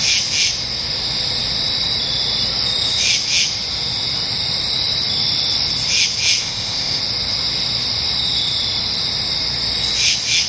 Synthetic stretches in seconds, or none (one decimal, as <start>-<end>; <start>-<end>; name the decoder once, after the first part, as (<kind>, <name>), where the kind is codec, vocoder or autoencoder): 6.4-7.0 (codec, ZipCodec)

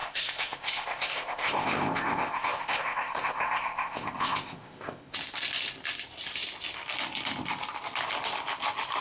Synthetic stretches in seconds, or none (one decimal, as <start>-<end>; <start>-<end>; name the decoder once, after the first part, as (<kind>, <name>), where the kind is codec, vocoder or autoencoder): 0.0-5.1 (codec, ZipCodec)

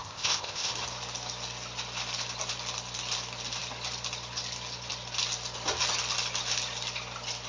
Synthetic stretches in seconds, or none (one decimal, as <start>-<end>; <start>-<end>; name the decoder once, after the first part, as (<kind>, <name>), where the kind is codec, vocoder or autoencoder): 0.0-0.7 (codec, ZipCodec)

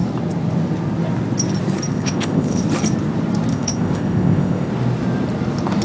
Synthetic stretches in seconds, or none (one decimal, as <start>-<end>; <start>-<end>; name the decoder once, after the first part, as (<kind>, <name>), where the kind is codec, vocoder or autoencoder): 1.9-2.6 (codec, ZipCodec); 3.5-4.7

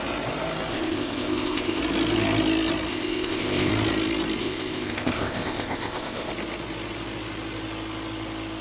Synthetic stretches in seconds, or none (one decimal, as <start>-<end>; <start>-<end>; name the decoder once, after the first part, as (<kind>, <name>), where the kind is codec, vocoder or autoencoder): 0.7-1.8 (codec, ZipCodec); 2.9-3.7; 4.4-6.3

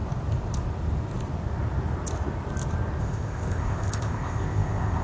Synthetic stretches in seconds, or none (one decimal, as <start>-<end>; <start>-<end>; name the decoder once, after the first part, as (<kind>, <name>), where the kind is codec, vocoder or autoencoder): 3.0-5.0 (codec, ZipCodec)